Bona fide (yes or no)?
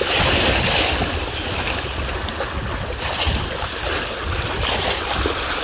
yes